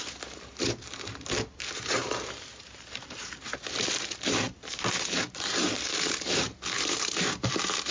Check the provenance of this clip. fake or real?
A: fake